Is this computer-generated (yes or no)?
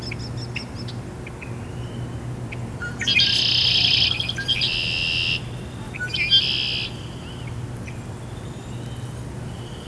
no